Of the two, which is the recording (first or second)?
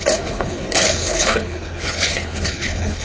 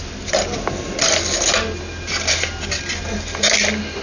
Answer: second